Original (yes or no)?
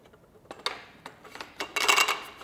yes